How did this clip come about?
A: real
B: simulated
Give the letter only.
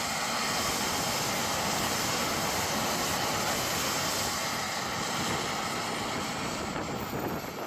A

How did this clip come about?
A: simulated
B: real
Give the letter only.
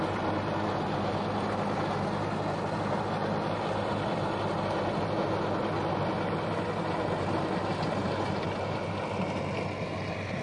B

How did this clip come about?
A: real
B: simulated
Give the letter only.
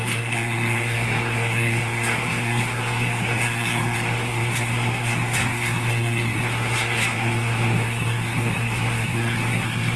B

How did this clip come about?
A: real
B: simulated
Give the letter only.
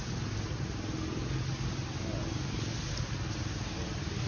A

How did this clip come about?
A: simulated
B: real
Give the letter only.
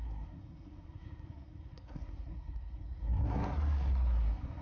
A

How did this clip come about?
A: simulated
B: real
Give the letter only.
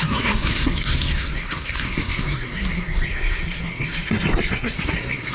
A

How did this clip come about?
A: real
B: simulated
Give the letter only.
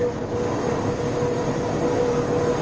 A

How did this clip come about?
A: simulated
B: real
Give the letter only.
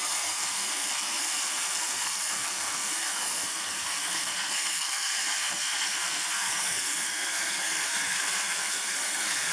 A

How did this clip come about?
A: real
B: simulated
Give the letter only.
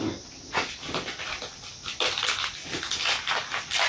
A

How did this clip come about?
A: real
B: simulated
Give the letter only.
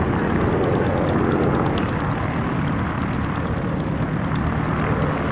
A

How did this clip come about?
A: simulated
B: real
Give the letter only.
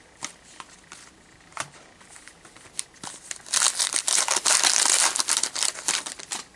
B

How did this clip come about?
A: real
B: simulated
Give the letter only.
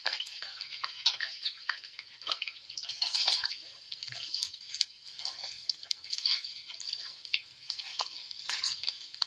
B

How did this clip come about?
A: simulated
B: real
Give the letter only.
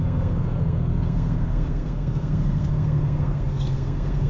A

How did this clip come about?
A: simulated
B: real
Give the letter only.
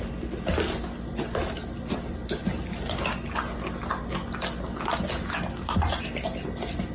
B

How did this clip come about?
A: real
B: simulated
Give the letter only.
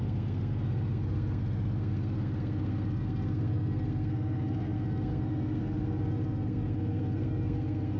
B